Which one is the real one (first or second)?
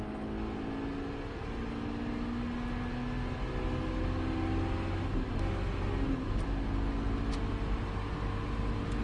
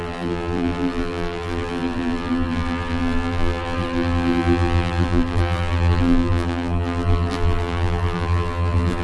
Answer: first